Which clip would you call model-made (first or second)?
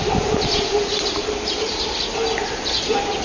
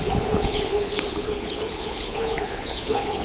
second